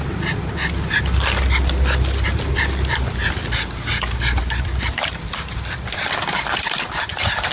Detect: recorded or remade recorded